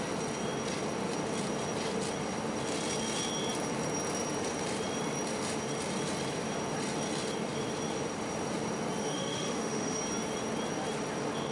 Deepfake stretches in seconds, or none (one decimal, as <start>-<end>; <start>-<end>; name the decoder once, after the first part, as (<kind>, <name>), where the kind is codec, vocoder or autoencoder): 9.0-10.0 (autoencoder, DAC-VAE)